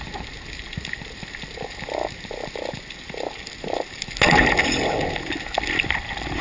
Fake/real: real